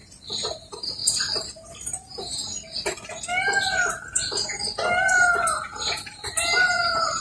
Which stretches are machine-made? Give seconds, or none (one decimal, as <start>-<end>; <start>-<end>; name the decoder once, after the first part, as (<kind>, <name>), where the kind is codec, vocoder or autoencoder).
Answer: 0.6-1.0 (vocoder, BigVGAN v2); 1.7-2.4; 5.8-7.2